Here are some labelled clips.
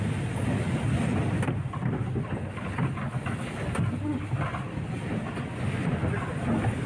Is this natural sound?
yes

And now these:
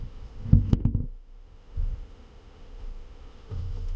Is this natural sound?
no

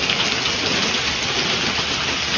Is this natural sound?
yes